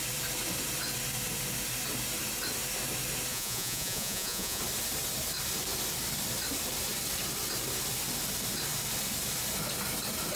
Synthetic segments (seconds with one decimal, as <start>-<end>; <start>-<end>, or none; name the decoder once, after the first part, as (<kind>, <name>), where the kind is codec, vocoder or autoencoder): 3.3-4.6 (vocoder, Vocos)